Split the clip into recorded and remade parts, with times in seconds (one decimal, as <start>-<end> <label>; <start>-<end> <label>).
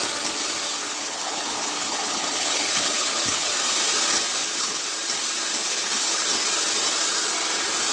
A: 0.0-0.8 recorded; 0.8-3.5 remade; 3.5-4.4 recorded; 4.4-4.9 remade; 4.9-5.6 recorded; 5.6-6.3 remade; 6.3-7.9 recorded